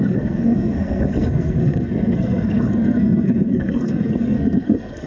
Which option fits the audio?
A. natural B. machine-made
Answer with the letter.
B